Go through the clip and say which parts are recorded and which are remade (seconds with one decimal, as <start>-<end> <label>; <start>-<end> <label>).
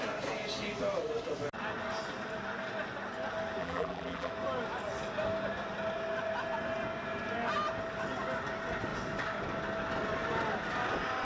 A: 0.0-3.6 recorded; 3.6-4.3 remade; 4.3-11.2 recorded